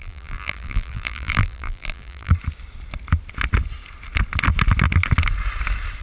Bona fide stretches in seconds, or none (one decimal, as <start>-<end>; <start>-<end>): 2.3-6.0